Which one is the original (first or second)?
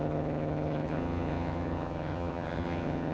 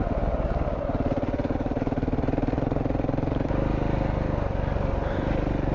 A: second